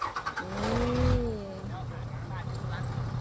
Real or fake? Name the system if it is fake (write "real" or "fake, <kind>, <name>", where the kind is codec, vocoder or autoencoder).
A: real